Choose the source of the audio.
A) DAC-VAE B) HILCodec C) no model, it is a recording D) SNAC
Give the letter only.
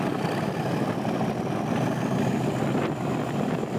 C